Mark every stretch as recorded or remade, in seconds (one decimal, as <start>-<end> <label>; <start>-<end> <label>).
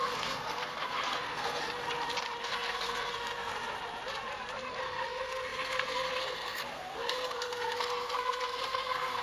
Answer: 0.0-1.6 remade; 1.6-2.4 recorded; 2.4-3.5 remade; 3.5-4.8 recorded; 4.8-9.2 remade